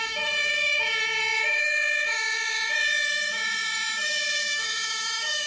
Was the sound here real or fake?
fake